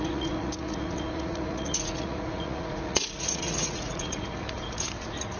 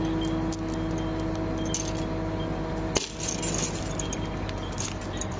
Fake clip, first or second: first